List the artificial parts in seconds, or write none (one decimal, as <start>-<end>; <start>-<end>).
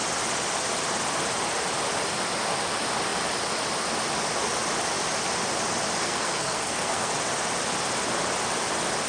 6.0-7.1